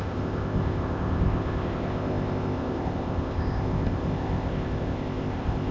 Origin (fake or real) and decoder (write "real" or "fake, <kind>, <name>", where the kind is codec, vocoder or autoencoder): fake, codec, ZipCodec